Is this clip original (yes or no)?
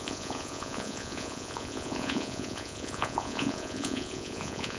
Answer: no